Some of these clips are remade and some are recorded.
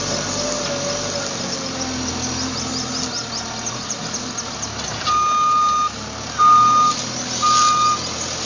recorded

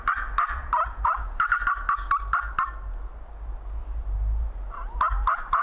recorded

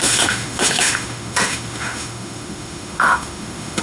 remade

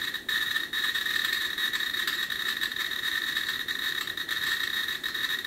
remade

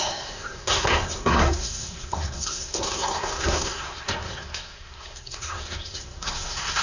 remade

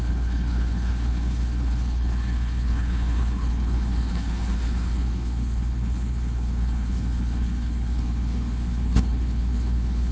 remade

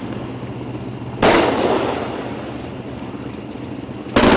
recorded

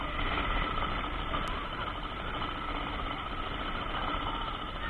recorded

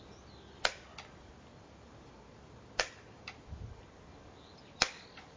recorded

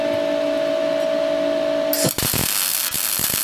recorded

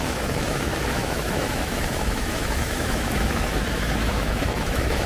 remade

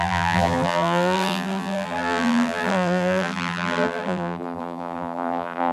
remade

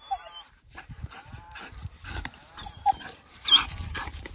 remade